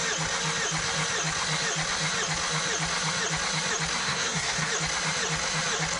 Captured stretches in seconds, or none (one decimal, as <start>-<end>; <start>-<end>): 0.0-4.0; 4.7-6.0